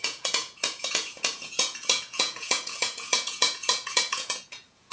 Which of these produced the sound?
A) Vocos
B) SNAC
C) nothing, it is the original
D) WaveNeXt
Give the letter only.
A